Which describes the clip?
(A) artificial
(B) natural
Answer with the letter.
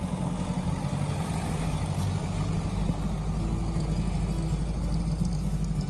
B